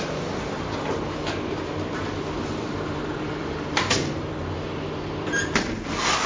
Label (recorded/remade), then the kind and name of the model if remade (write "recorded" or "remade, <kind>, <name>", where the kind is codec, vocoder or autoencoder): remade, vocoder, BigVGAN v2